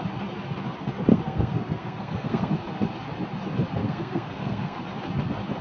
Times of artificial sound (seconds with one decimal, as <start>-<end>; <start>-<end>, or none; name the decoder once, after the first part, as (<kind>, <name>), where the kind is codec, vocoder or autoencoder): 1.1-2.5 (codec, SNAC); 3.8-4.8